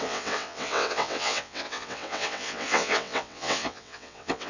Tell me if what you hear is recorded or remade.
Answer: remade